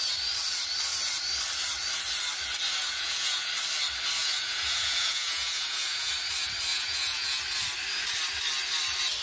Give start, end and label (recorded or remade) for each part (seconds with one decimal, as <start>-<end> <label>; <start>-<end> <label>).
0.0-2.8 recorded; 2.8-3.5 remade; 3.5-4.2 recorded; 4.2-6.1 remade; 6.1-6.7 recorded; 6.7-7.4 remade; 7.4-9.2 recorded